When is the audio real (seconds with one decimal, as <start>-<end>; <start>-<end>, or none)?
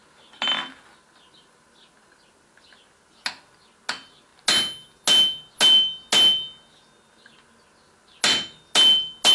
0.0-9.3